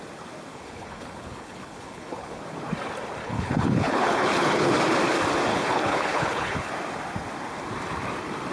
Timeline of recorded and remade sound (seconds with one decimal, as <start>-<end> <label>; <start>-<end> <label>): 0.0-0.5 recorded; 0.5-2.4 remade; 2.4-3.2 recorded; 3.2-4.7 remade; 4.7-5.5 recorded; 5.5-6.7 remade; 6.7-8.5 recorded